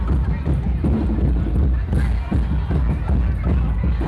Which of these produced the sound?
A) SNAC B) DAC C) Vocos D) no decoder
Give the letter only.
D